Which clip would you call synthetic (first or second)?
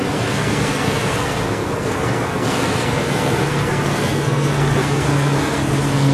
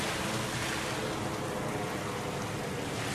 first